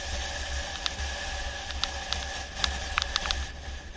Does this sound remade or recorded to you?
recorded